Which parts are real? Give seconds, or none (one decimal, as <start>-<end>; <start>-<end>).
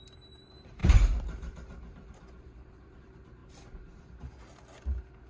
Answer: 0.0-0.8; 3.0-5.3